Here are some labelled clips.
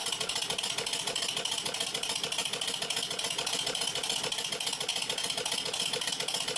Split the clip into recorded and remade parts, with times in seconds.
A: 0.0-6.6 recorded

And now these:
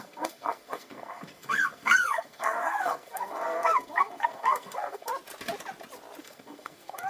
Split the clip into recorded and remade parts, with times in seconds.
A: 0.0-5.1 remade; 5.1-6.2 recorded; 6.2-7.1 remade